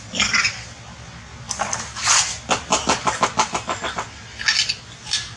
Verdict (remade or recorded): recorded